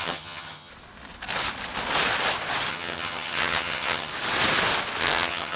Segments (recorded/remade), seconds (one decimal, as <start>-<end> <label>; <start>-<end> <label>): 0.0-0.7 remade; 0.7-2.7 recorded; 2.7-4.1 remade; 4.1-5.0 recorded; 5.0-5.6 remade